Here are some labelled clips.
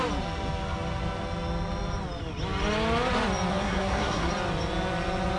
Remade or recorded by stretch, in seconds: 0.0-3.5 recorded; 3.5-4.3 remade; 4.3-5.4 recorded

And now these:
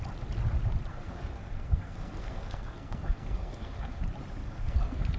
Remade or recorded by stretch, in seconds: 0.0-0.9 recorded; 0.9-4.0 remade; 4.0-4.4 recorded; 4.4-5.2 remade